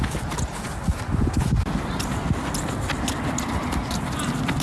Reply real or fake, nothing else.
real